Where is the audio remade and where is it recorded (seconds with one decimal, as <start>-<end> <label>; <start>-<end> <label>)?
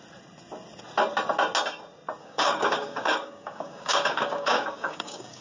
0.0-2.2 recorded; 2.2-5.4 remade